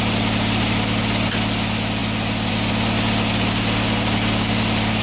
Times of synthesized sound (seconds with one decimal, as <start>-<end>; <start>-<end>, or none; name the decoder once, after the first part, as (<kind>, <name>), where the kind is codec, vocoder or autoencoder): none